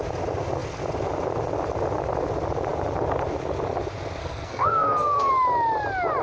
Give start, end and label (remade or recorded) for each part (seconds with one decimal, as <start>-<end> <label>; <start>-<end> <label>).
0.0-4.2 recorded; 4.2-5.3 remade; 5.3-6.2 recorded